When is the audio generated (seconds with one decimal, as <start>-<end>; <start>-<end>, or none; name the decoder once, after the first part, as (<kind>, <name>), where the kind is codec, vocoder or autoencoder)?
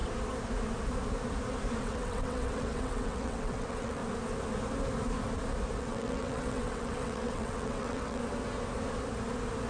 1.8-4.0 (vocoder, WaveNeXt); 5.8-8.2